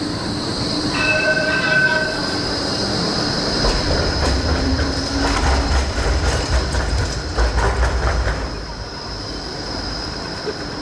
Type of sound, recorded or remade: remade